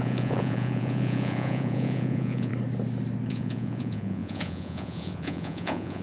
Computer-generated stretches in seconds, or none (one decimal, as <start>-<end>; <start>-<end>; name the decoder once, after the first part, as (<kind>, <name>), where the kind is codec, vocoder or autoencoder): 0.0-2.5 (vocoder, Vocos); 3.3-6.0